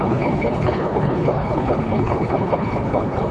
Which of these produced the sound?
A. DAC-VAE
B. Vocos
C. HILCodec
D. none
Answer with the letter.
C